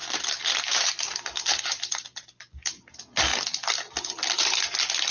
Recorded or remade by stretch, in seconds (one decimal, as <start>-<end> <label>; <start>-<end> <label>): 0.0-5.1 recorded